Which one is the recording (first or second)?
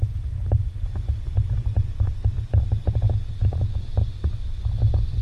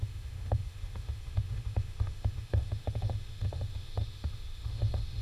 first